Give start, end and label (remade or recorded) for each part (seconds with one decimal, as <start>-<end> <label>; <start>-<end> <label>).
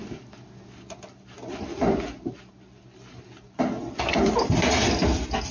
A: 0.0-5.5 recorded